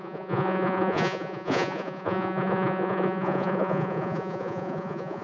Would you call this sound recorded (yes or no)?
no